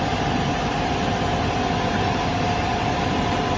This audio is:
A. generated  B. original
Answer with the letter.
A